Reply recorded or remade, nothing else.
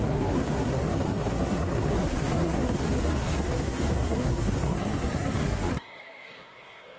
remade